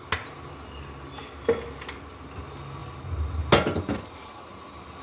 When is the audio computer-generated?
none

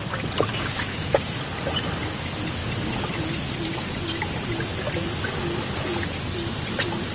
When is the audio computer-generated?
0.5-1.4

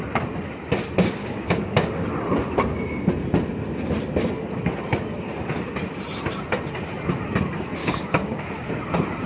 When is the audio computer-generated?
1.2-2.1; 7.8-8.7